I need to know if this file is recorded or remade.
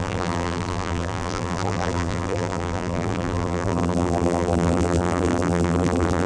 remade